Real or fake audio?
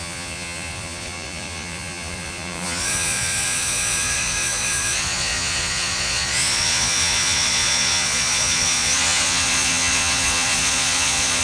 fake